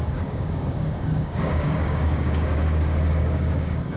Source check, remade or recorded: remade